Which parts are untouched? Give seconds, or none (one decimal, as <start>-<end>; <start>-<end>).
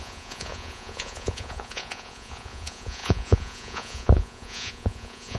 none